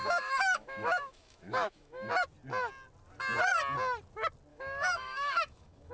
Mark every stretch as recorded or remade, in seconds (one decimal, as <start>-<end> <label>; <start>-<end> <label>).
0.0-2.1 remade; 2.1-4.5 recorded; 4.5-5.9 remade